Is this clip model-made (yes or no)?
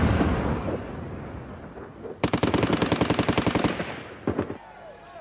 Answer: no